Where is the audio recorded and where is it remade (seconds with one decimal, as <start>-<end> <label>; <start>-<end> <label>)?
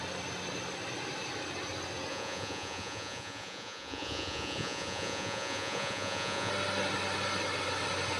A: 0.0-2.1 recorded; 2.1-6.5 remade; 6.5-8.2 recorded